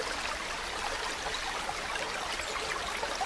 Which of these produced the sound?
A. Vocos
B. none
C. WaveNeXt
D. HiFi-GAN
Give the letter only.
B